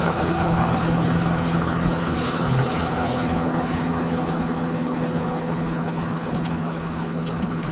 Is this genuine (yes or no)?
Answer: no